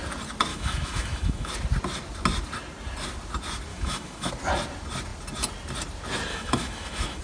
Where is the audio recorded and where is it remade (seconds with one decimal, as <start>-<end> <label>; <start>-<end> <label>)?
0.0-0.5 recorded; 0.5-1.5 remade; 1.5-3.7 recorded; 3.7-4.3 remade; 4.3-6.3 recorded; 6.3-7.2 remade